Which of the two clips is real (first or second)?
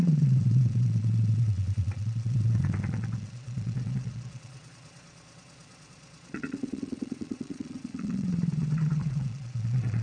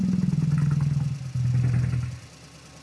second